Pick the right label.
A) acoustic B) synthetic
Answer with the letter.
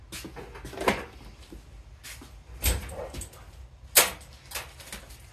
A